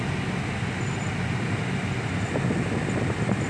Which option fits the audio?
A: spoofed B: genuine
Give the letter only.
B